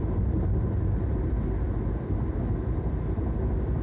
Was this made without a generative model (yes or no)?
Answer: yes